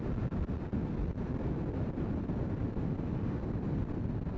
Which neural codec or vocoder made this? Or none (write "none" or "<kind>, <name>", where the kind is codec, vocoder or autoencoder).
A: none